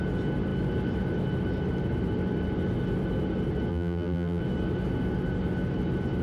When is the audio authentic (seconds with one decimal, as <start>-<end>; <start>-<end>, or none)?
0.0-3.7; 4.4-6.2